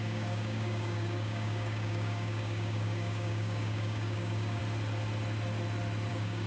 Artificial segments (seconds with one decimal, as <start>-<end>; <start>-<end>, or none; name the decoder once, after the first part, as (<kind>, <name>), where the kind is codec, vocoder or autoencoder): 0.0-4.6 (codec, DAC); 6.1-6.5